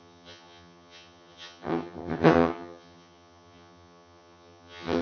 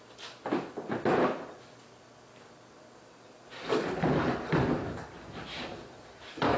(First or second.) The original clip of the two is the second